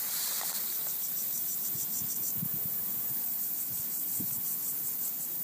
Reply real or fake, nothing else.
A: fake